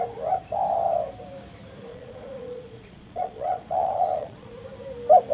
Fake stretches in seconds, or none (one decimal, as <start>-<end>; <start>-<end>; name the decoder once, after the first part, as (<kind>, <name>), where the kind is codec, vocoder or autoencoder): 1.9-4.5 (vocoder, Vocos)